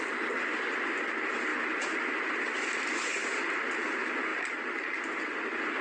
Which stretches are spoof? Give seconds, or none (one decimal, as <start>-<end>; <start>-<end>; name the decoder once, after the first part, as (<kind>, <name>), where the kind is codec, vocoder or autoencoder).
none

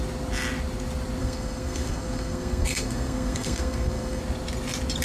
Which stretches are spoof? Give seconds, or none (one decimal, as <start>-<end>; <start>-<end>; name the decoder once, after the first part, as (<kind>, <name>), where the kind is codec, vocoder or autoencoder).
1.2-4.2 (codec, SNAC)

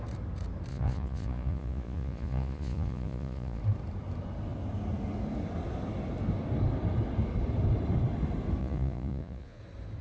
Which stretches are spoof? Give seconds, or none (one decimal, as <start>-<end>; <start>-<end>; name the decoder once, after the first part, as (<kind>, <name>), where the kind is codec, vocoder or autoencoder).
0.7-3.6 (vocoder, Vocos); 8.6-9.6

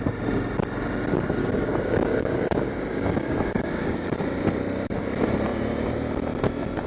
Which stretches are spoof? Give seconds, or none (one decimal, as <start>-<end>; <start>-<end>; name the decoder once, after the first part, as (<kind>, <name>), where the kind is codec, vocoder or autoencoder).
1.4-4.2 (codec, DAC)

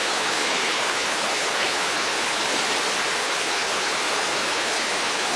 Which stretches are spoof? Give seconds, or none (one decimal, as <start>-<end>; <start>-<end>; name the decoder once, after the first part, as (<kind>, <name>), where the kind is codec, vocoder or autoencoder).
0.0-2.6 (codec, HILCodec); 3.2-5.4

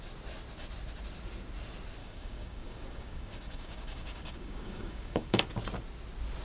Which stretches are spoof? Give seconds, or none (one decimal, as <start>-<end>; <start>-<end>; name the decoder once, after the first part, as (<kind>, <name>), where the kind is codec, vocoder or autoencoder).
2.0-5.4 (codec, DAC)

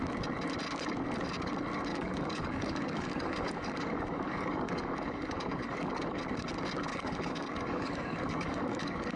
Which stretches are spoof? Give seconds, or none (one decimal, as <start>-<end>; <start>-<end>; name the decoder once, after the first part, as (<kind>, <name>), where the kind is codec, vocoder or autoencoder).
1.9-6.2 (codec, DAC); 6.9-9.2